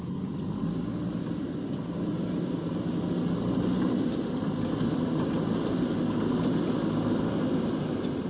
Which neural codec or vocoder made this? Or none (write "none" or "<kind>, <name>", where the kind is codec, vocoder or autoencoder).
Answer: none